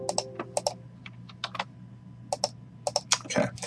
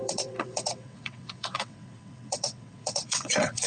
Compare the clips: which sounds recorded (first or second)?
first